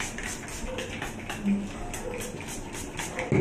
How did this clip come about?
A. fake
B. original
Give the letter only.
B